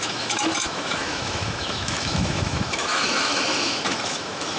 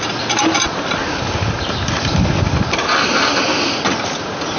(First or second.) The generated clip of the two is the first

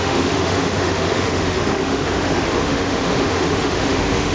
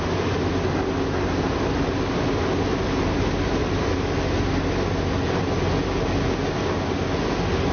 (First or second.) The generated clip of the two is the first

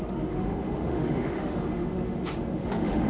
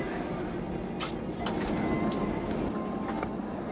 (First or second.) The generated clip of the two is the first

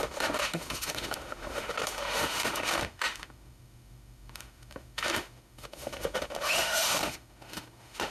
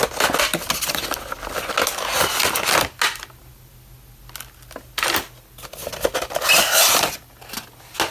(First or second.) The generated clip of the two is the first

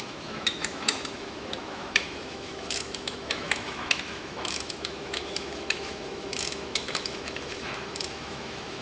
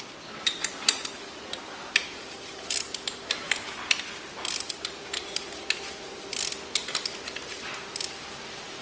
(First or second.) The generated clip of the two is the first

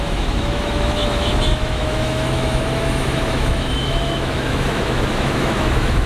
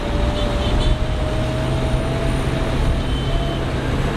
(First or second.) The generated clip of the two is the first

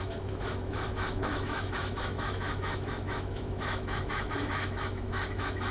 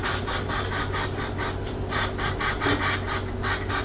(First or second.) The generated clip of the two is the first